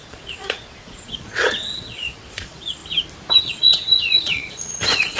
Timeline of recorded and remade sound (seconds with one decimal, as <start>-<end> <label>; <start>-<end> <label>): 0.0-2.8 remade; 2.8-3.4 recorded; 3.4-5.2 remade